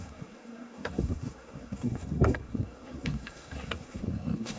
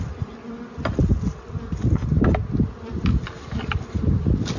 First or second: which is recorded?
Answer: second